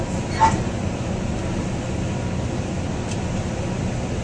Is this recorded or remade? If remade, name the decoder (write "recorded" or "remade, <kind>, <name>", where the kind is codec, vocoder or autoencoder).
recorded